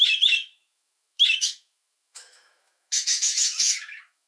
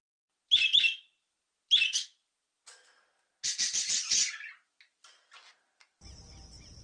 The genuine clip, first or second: second